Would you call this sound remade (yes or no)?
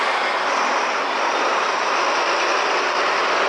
no